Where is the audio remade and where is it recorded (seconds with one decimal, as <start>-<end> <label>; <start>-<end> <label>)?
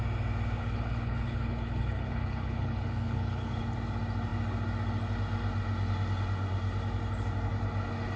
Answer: 0.0-0.6 recorded; 0.6-3.6 remade; 3.6-8.2 recorded